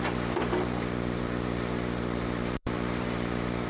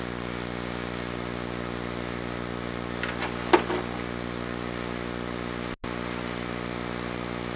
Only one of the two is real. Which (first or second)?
second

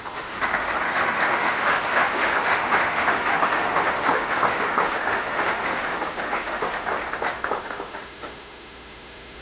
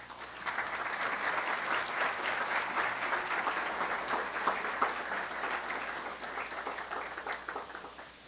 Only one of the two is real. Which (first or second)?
second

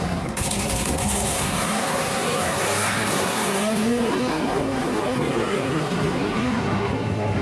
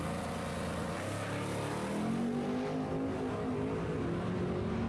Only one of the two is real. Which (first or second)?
second